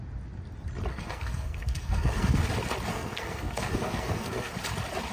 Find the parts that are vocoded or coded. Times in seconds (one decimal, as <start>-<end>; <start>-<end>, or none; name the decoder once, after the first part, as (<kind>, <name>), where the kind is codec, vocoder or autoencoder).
0.9-2.4 (codec, SNAC); 2.9-4.5